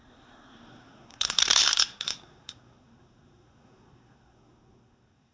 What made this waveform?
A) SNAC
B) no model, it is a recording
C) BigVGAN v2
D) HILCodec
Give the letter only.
A